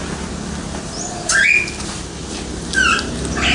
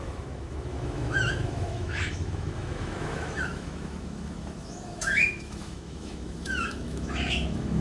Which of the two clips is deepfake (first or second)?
second